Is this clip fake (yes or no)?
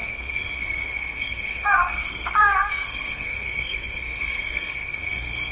yes